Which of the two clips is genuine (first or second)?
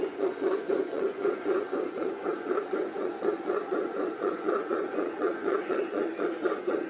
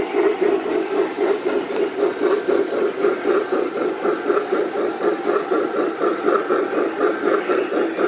second